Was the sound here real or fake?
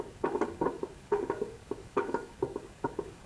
fake